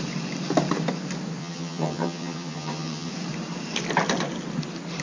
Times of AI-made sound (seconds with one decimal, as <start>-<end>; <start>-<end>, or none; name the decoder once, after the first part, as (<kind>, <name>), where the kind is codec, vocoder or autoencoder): 1.4-3.1 (vocoder, HiFi-GAN)